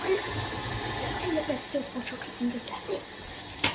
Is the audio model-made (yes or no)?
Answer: no